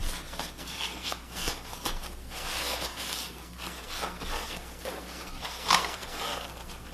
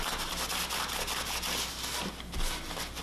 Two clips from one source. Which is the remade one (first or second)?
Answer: first